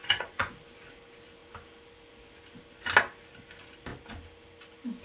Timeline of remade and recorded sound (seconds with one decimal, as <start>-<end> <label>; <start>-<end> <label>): 0.0-0.5 remade; 0.5-5.0 recorded